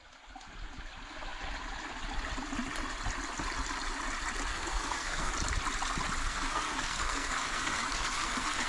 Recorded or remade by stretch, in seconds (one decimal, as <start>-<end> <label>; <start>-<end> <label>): 0.0-4.5 recorded; 4.5-5.3 remade; 5.3-6.2 recorded; 6.2-8.7 remade

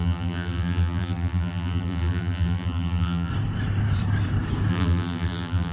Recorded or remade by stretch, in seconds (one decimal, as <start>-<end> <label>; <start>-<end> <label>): 0.0-3.3 remade; 3.3-4.7 recorded; 4.7-5.7 remade

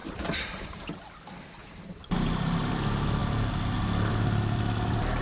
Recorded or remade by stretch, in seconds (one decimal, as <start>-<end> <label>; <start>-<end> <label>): 0.0-0.8 remade; 0.8-1.6 recorded; 1.6-2.7 remade; 2.7-5.2 recorded

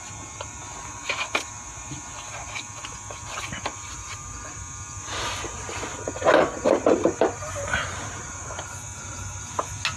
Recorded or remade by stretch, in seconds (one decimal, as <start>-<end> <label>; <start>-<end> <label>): 0.0-10.0 recorded